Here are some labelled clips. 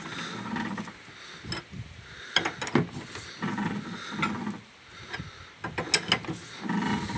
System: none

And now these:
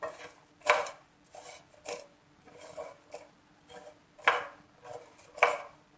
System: none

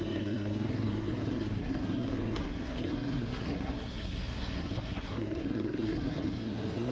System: codec, SNAC